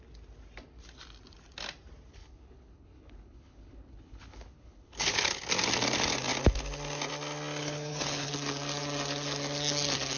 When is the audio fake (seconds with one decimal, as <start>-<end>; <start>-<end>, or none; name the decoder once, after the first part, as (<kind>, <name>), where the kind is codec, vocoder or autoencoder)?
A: 2.1-5.4 (codec, HILCodec); 7.6-8.3